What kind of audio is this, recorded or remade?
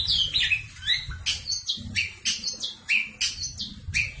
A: recorded